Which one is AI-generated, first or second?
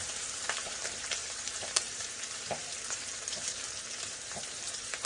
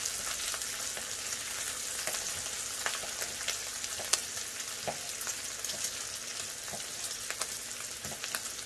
first